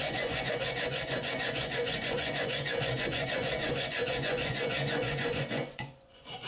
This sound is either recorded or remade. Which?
remade